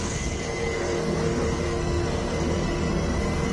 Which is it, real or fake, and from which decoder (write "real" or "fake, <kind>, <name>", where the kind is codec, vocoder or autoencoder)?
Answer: fake, codec, SNAC